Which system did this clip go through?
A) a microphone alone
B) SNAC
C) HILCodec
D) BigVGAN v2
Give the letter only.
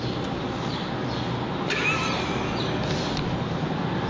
A